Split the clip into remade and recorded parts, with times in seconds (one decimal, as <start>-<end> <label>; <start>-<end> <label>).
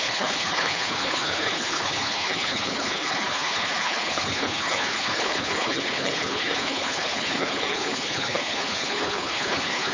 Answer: 0.0-9.9 remade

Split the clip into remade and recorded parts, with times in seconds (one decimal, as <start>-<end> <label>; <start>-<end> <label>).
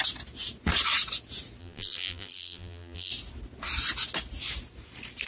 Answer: 0.0-1.6 recorded; 1.6-3.1 remade; 3.1-5.3 recorded